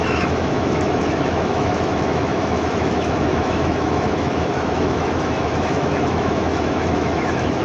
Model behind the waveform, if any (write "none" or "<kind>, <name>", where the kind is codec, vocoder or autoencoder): autoencoder, DAC-VAE